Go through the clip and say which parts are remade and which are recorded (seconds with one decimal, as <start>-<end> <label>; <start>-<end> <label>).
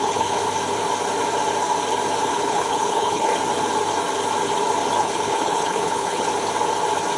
0.0-0.4 remade; 0.4-2.3 recorded; 2.3-3.3 remade; 3.3-5.0 recorded; 5.0-6.3 remade; 6.3-7.2 recorded